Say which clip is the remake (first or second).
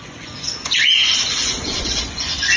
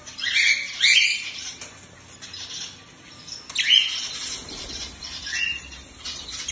first